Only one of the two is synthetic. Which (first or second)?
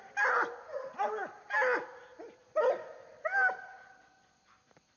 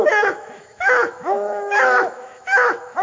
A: second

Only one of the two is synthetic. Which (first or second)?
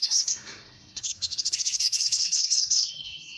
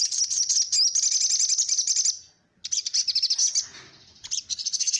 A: first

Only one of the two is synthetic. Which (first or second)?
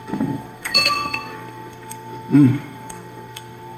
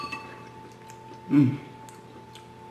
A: first